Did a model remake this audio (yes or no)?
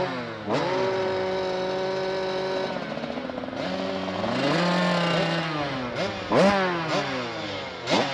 no